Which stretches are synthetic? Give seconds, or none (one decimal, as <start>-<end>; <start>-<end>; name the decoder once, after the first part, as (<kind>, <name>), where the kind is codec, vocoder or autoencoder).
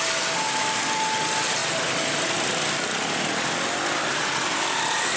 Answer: none